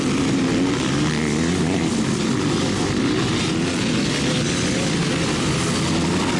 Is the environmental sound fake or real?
real